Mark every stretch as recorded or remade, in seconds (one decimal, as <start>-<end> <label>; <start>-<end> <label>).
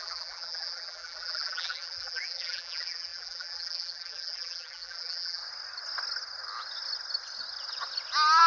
0.0-5.4 remade; 5.4-8.5 recorded